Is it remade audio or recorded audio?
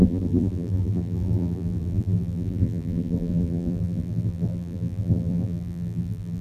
remade